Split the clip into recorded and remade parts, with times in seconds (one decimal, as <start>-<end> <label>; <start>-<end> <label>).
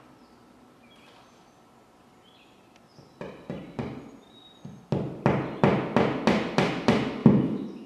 0.0-7.2 recorded; 7.2-7.9 remade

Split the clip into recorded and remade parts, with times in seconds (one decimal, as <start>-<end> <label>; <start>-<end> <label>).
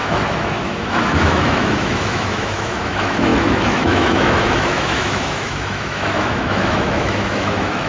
0.0-7.9 remade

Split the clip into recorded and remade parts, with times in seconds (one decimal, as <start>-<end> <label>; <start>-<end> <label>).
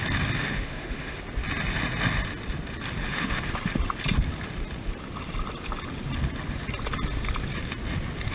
0.0-0.4 recorded; 0.4-1.2 remade; 1.2-3.0 recorded; 3.0-3.5 remade; 3.5-8.3 recorded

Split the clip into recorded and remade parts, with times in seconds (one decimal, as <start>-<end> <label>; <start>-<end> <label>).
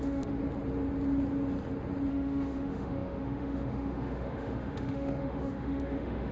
0.0-0.4 remade; 0.4-2.1 recorded; 2.1-6.3 remade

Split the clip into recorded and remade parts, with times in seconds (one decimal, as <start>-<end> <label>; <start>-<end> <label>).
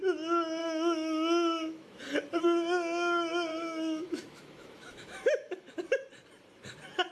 0.0-0.6 recorded; 0.6-2.0 remade; 2.0-3.5 recorded; 3.5-5.7 remade; 5.7-7.1 recorded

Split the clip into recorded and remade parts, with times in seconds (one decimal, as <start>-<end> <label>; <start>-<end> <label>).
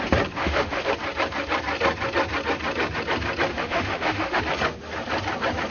0.0-0.4 recorded; 0.4-0.9 remade; 0.9-3.5 recorded; 3.5-4.4 remade; 4.4-5.7 recorded